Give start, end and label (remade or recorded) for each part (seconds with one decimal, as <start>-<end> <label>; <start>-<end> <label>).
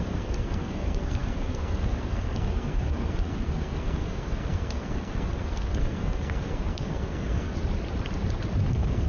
0.0-7.5 remade; 7.5-8.7 recorded; 8.7-9.1 remade